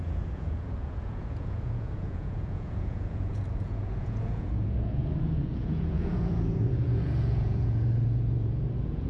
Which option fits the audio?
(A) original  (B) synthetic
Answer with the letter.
B